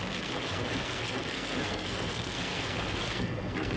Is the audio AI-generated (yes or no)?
yes